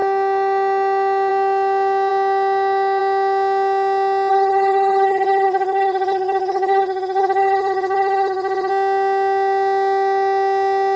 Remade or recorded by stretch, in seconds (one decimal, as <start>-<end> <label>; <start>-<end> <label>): 0.0-4.3 recorded; 4.3-8.7 remade; 8.7-11.0 recorded